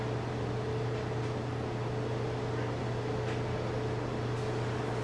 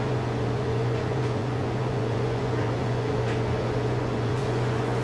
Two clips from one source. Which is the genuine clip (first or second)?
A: first